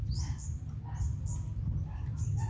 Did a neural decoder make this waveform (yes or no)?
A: no